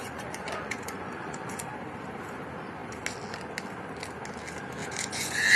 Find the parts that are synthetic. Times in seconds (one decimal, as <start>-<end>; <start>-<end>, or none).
0.0-1.6; 4.8-5.6